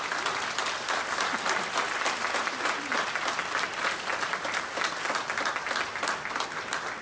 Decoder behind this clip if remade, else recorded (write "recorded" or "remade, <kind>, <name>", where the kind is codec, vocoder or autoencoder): recorded